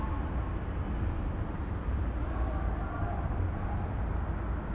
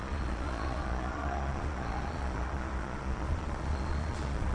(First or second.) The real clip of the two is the first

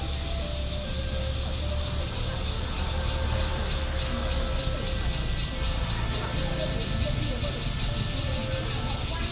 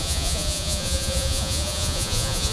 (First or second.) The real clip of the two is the first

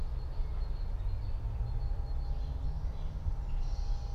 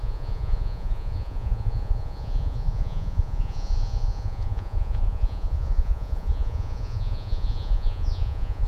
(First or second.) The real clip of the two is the first